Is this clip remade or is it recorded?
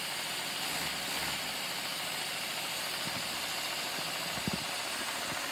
recorded